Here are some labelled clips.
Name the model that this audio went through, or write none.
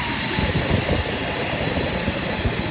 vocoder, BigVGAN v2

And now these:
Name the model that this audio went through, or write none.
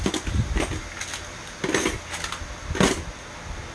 none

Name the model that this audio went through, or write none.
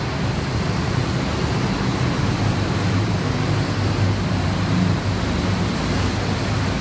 none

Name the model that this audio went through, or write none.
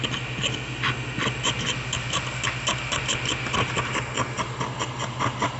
none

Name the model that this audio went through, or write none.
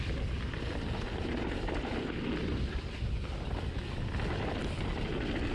none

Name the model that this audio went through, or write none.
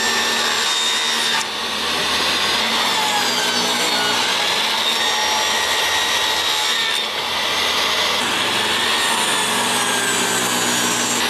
none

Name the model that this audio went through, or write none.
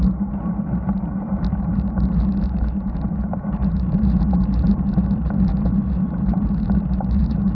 vocoder, BigVGAN v2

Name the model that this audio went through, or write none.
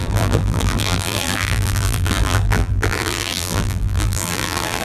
vocoder, BigVGAN v2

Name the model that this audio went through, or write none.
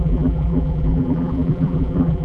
vocoder, BigVGAN v2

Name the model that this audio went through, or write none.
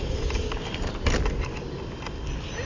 none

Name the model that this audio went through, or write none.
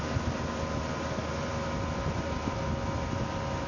none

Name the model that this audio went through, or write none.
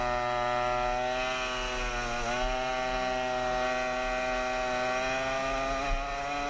none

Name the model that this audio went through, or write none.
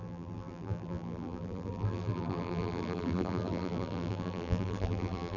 vocoder, BigVGAN v2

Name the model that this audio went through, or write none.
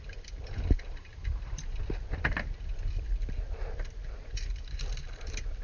vocoder, BigVGAN v2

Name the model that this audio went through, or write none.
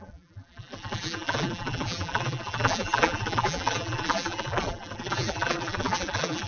vocoder, BigVGAN v2